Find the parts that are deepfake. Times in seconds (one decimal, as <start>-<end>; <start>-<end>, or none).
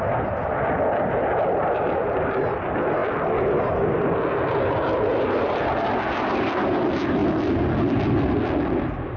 none